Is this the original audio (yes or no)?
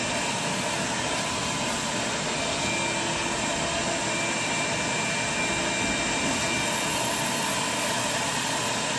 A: yes